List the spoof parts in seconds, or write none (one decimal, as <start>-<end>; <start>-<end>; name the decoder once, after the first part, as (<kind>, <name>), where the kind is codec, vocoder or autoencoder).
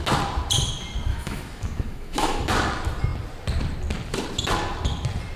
1.1-2.5 (autoencoder, DAC-VAE)